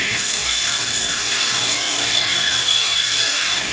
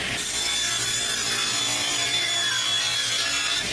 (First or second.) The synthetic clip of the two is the first